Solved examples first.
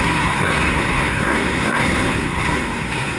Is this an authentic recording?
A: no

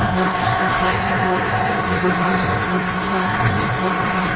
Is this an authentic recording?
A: no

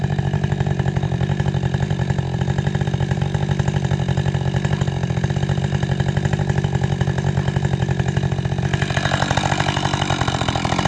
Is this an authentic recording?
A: no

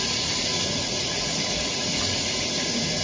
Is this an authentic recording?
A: no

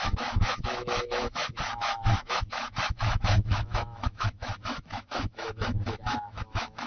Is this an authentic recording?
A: no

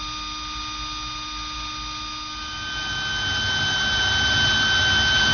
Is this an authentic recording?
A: yes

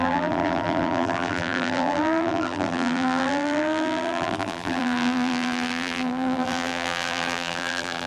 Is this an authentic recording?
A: no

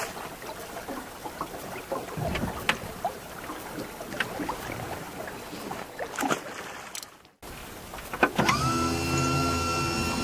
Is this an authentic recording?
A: yes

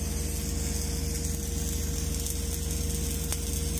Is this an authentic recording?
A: yes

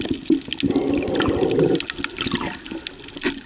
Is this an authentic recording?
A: yes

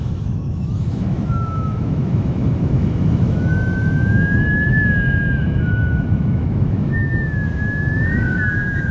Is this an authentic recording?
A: no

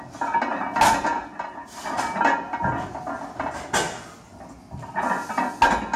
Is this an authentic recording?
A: yes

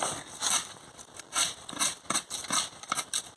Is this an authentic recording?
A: no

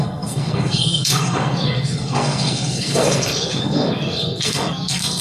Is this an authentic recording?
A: no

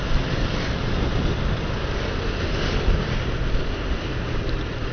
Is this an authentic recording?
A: yes